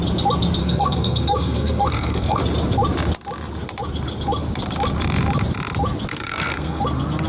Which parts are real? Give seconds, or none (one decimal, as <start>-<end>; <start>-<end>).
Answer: 0.0-0.6; 2.4-6.1; 6.8-7.3